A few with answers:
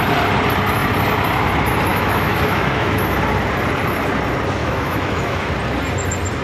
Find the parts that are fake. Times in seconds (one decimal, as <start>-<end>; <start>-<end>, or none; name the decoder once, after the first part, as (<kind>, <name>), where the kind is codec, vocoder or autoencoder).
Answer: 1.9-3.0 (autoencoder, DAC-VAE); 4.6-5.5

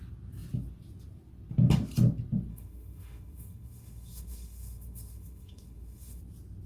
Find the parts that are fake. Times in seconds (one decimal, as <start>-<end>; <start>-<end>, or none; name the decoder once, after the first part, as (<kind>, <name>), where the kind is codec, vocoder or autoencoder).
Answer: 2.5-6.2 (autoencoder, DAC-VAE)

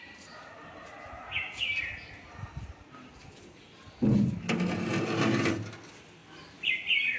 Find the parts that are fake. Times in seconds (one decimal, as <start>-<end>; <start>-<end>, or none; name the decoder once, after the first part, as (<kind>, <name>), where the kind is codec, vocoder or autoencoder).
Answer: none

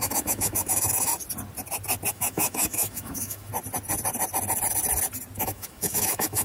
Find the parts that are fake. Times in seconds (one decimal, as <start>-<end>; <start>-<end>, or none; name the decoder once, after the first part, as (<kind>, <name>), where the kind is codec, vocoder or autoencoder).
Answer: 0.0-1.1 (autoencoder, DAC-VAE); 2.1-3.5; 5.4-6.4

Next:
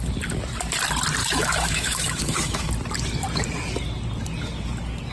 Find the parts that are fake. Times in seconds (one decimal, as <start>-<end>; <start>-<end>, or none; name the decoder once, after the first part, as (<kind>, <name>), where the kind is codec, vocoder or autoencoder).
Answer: 1.2-2.7 (autoencoder, DAC-VAE)